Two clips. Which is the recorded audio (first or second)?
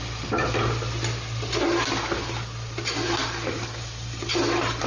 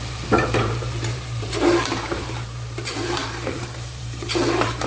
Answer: first